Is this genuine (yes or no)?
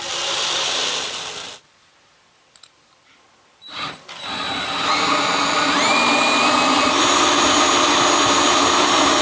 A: yes